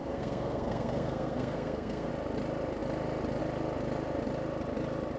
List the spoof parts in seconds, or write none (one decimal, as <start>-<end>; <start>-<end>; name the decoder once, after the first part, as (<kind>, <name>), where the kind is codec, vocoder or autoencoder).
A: 0.0-2.1 (codec, SNAC)